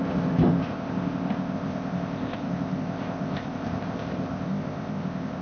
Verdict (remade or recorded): remade